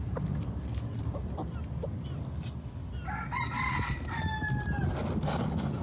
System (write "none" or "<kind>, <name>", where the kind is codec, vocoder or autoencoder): none